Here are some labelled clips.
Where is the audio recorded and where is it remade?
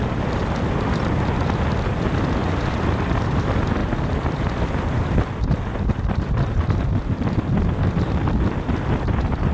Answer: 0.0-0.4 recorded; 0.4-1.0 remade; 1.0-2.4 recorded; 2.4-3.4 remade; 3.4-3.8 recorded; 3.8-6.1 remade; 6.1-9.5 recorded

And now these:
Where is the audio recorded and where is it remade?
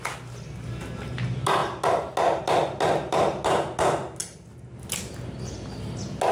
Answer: 0.0-6.3 recorded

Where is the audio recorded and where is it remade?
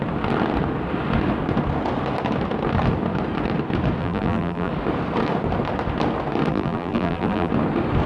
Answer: 0.0-4.0 recorded; 4.0-4.7 remade; 4.7-6.5 recorded; 6.5-7.5 remade; 7.5-8.1 recorded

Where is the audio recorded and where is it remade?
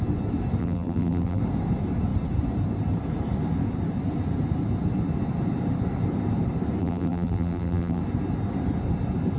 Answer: 0.0-0.6 recorded; 0.6-1.4 remade; 1.4-6.8 recorded; 6.8-8.0 remade; 8.0-9.4 recorded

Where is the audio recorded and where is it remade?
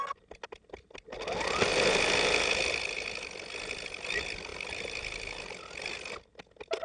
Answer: 0.0-1.7 recorded; 1.7-2.7 remade; 2.7-4.5 recorded; 4.5-5.6 remade; 5.6-6.8 recorded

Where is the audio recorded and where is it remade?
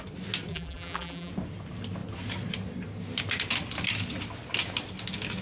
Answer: 0.0-0.5 recorded; 0.5-1.3 remade; 1.3-5.4 recorded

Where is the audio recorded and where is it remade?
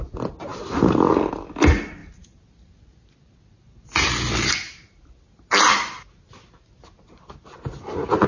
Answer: 0.0-8.3 recorded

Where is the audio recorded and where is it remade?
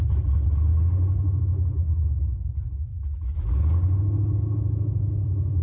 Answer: 0.0-5.6 recorded